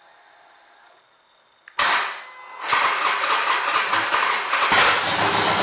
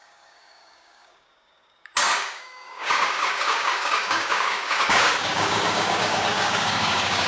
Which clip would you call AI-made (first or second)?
second